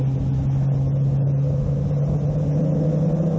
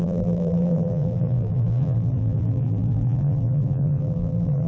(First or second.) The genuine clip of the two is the first